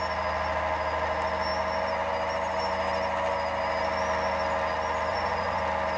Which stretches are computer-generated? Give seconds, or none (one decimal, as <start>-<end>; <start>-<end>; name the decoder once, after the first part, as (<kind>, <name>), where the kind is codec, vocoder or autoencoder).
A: 5.1-5.6 (vocoder, Vocos)